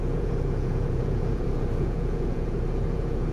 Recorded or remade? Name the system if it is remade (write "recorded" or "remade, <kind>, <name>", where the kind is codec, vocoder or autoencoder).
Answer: remade, vocoder, Vocos